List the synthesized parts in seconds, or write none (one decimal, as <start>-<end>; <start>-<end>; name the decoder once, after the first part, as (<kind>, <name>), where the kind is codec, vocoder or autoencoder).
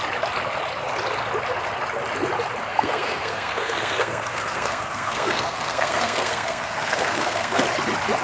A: 2.7-7.6 (codec, SNAC)